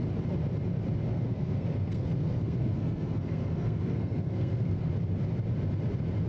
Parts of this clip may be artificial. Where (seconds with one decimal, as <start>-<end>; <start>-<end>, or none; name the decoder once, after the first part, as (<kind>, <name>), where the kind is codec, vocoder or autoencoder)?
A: 1.1-4.9 (codec, SNAC)